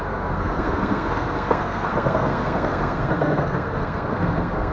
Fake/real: fake